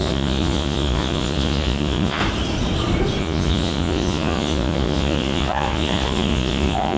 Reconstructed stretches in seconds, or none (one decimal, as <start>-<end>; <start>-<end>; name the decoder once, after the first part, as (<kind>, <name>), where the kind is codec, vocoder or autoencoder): 0.0-2.2 (vocoder, Vocos); 3.2-7.0